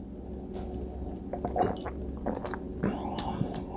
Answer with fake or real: real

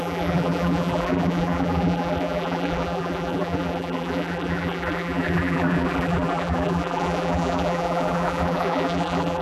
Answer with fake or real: fake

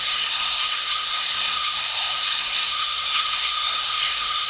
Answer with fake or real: fake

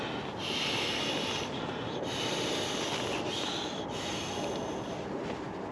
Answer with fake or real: real